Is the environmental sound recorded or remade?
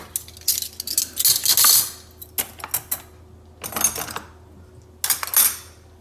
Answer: recorded